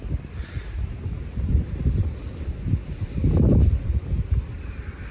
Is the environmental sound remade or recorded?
recorded